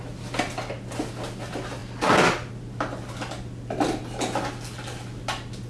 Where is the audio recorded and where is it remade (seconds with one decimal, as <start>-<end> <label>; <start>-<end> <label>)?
0.0-5.7 recorded